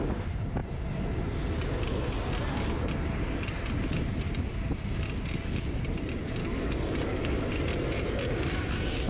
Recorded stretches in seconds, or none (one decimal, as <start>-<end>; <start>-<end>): 0.0-6.4; 7.5-9.1